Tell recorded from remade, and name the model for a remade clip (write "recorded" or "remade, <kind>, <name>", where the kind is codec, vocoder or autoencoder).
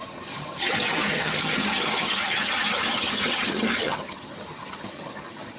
remade, vocoder, HiFi-GAN